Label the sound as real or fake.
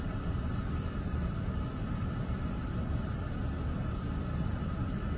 real